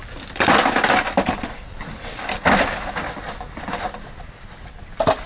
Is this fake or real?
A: real